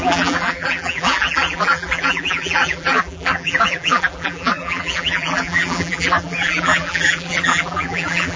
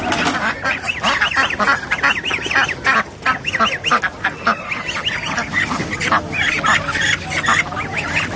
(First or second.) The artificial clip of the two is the first